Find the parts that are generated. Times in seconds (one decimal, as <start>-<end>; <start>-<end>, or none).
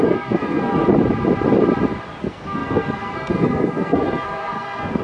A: 0.0-0.8; 2.2-5.0